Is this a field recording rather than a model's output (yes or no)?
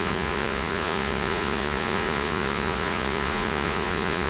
no